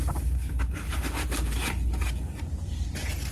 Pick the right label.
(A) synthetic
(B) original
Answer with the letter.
A